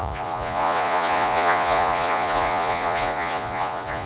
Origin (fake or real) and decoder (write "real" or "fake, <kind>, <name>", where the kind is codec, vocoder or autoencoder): fake, vocoder, Vocos